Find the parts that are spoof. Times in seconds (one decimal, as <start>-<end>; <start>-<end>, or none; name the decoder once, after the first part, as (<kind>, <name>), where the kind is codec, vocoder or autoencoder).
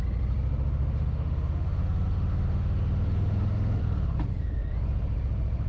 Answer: 0.8-3.8 (autoencoder, DAC-VAE)